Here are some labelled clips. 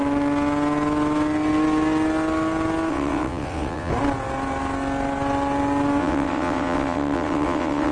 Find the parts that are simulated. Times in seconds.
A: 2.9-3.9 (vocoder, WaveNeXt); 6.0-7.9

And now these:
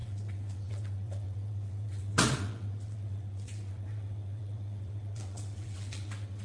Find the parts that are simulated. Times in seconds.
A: 0.0-6.4 (vocoder, WaveNeXt)

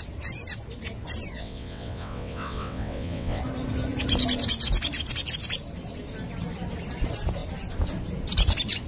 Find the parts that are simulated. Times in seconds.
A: 1.3-3.4 (vocoder, WaveNeXt)

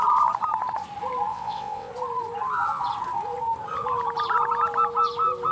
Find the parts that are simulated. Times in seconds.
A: 1.3-1.9 (vocoder, WaveNeXt)

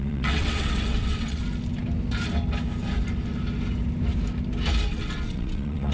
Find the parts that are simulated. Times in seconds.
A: 0.0-1.4 (vocoder, WaveNeXt); 4.9-5.9